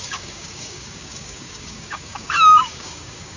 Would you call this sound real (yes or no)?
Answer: no